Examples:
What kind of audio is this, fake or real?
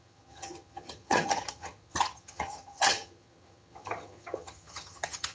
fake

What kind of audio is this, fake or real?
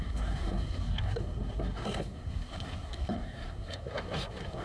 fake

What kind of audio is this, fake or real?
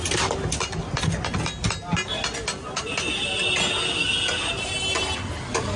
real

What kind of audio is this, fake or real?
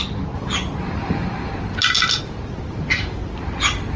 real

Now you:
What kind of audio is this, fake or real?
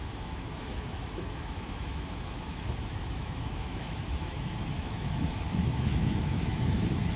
fake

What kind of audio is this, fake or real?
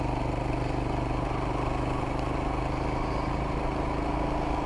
real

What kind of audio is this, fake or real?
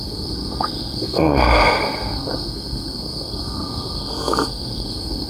fake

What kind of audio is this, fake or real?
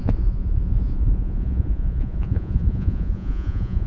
fake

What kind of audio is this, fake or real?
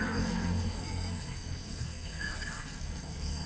fake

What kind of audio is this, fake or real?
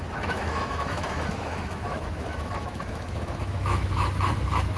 fake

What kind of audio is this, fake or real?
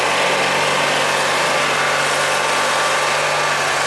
real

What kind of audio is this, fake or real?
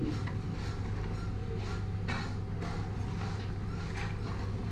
real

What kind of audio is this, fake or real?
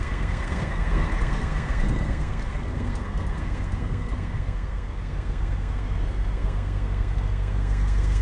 fake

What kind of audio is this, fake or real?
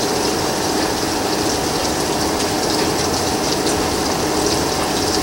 real